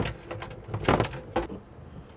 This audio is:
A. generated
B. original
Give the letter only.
B